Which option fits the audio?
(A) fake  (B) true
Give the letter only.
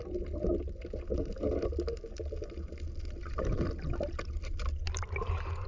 B